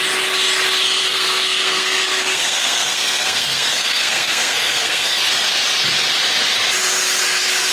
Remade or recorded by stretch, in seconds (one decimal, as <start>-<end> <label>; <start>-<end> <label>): 0.0-1.0 recorded; 1.0-5.2 remade; 5.2-7.7 recorded